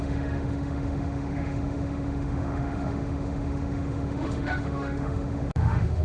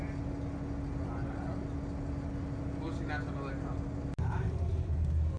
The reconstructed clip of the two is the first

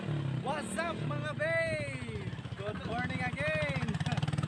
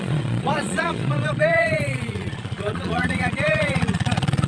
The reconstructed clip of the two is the second